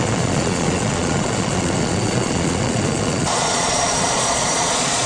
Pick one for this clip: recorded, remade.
remade